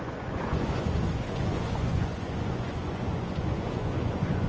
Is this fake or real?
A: fake